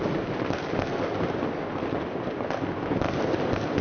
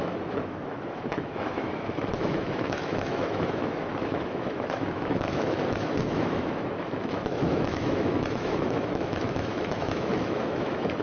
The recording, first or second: first